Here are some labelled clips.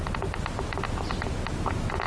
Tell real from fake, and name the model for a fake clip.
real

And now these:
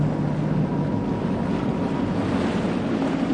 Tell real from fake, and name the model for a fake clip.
real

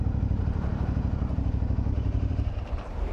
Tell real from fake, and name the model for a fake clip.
fake, vocoder, BigVGAN v2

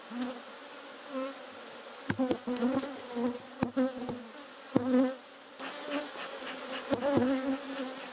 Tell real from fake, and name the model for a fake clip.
real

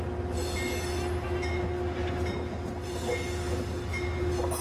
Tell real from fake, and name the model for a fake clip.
real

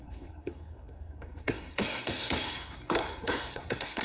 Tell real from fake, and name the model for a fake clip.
fake, codec, SNAC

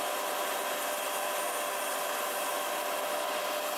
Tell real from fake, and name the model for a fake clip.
real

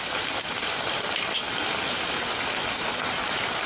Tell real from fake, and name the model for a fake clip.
real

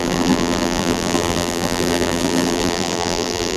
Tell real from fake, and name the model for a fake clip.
fake, vocoder, BigVGAN v2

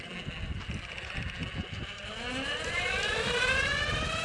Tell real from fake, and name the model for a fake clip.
real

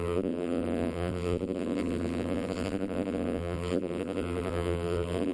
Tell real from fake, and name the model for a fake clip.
fake, vocoder, BigVGAN v2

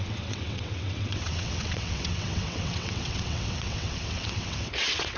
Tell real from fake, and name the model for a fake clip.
fake, vocoder, WaveNeXt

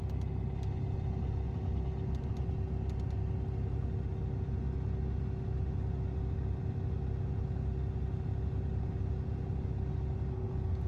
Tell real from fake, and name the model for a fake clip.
real